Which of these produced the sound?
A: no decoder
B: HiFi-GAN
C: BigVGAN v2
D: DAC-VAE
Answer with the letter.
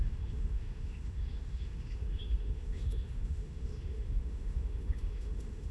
D